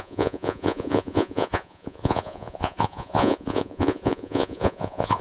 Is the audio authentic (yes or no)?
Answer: no